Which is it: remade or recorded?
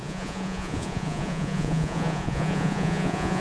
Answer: remade